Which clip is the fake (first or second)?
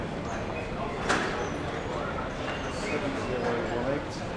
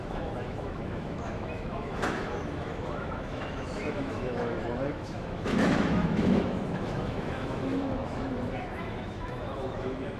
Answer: second